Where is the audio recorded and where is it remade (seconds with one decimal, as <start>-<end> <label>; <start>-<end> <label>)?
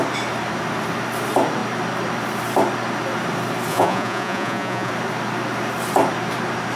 0.0-3.7 recorded; 3.7-4.9 remade; 4.9-6.8 recorded